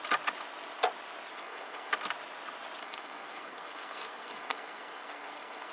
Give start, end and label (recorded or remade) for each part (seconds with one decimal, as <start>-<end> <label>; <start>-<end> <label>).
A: 0.0-1.3 recorded; 1.3-1.9 remade; 1.9-2.8 recorded; 2.8-5.7 remade